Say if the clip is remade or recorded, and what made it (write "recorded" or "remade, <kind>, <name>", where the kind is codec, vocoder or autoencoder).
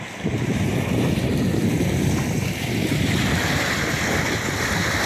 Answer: recorded